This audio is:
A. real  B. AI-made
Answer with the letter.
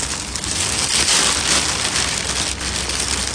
A